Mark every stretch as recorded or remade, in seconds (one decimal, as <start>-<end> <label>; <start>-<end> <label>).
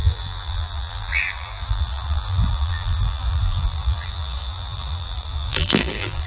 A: 0.0-6.3 remade